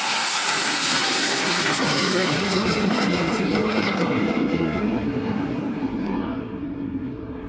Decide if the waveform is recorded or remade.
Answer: remade